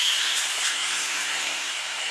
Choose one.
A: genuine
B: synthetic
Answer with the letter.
B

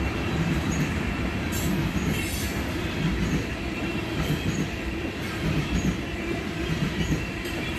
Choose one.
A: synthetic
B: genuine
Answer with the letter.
A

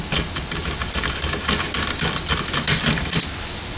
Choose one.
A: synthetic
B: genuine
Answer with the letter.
B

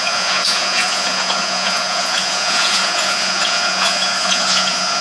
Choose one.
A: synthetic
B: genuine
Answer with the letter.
A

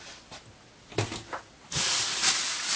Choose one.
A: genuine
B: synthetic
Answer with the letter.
A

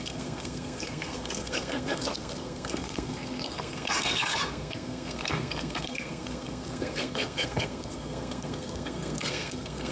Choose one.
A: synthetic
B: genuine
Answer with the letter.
A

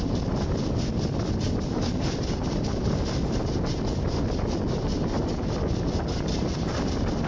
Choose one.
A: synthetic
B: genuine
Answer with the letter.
B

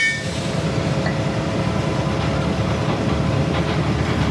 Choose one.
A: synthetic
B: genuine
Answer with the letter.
A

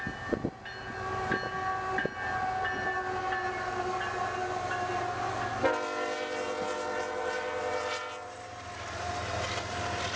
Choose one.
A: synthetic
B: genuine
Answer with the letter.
B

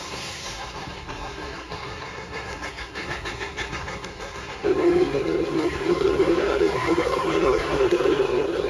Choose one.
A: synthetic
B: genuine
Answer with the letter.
A